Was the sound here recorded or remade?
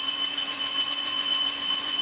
remade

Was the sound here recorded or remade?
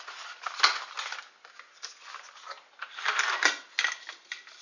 recorded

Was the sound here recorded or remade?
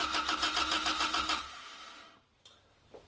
recorded